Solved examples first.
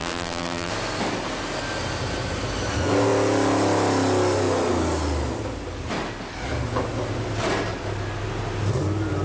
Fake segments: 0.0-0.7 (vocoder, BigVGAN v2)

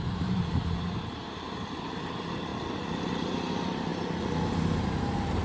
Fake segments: 0.0-2.5 (vocoder, BigVGAN v2); 3.1-3.9; 4.5-5.4